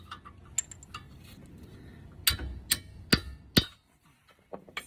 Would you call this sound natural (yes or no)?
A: yes